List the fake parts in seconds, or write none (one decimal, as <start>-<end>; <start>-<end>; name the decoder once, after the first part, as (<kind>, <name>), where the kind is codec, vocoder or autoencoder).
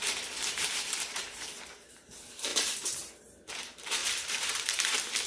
0.0-5.3 (vocoder, BigVGAN v2)